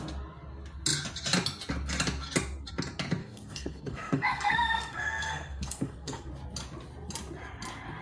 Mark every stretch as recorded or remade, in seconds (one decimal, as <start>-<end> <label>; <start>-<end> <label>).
0.0-3.2 recorded; 3.2-6.3 remade; 6.3-8.0 recorded